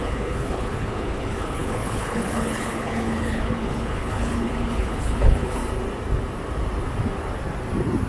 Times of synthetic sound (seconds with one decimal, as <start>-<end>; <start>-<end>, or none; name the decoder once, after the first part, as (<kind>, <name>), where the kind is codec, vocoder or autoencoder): 0.0-5.6 (codec, HILCodec)